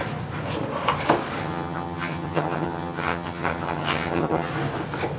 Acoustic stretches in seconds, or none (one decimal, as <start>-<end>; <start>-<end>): 0.0-1.4; 4.5-5.2